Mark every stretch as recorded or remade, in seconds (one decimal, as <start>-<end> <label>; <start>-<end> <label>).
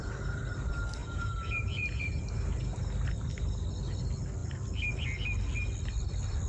0.0-1.0 recorded; 1.0-2.1 remade; 2.1-6.5 recorded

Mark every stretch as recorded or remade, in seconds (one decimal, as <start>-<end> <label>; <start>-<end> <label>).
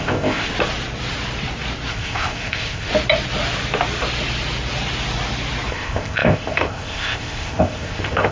0.0-0.5 remade; 0.5-1.9 recorded; 1.9-2.9 remade; 2.9-5.7 recorded; 5.7-8.3 remade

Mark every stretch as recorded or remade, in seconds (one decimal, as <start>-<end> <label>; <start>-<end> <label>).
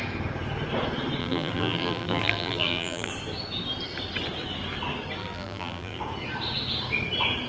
0.0-1.2 recorded; 1.2-3.1 remade; 3.1-5.2 recorded; 5.2-6.0 remade; 6.0-7.5 recorded